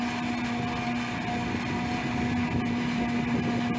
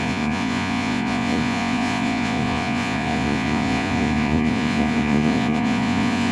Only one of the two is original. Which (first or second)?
first